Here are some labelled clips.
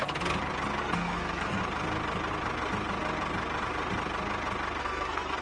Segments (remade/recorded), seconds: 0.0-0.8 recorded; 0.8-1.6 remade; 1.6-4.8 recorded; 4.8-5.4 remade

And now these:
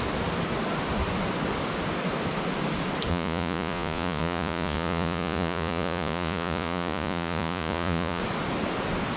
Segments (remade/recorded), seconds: 0.0-3.1 recorded; 3.1-8.2 remade; 8.2-9.2 recorded

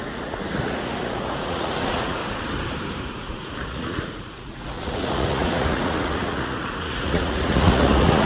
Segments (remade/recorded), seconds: 0.0-2.2 remade; 2.2-3.0 recorded; 3.0-8.3 remade

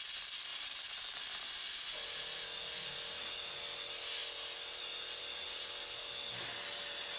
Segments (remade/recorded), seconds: 0.0-0.5 recorded; 0.5-1.2 remade; 1.2-7.2 recorded

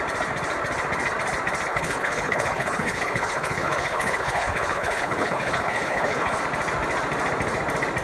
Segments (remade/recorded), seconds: 0.0-1.7 recorded; 1.7-6.4 remade; 6.4-8.0 recorded